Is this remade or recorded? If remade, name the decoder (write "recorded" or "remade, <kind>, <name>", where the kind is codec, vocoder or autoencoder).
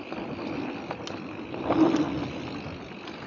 recorded